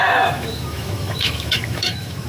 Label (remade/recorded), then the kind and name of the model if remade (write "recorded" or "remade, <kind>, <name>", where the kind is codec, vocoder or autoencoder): remade, autoencoder, DAC-VAE